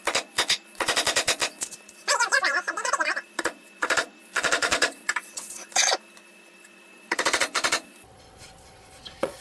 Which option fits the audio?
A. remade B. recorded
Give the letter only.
A